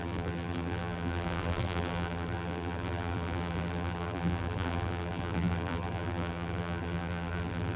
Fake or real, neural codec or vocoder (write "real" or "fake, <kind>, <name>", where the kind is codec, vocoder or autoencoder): fake, vocoder, BigVGAN v2